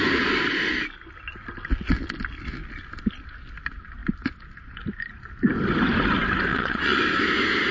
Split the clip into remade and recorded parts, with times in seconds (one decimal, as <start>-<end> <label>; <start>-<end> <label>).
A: 0.0-6.5 recorded; 6.5-7.0 remade; 7.0-7.7 recorded